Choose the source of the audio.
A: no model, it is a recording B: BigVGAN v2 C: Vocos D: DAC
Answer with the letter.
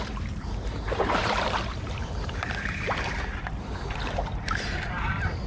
B